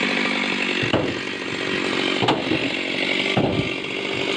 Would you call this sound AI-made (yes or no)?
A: no